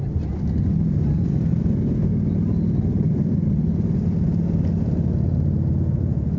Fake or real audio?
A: real